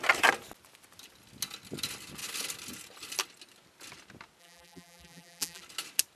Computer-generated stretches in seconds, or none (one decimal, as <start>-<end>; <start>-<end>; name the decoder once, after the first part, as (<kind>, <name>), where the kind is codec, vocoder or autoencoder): 4.4-5.6 (vocoder, BigVGAN v2)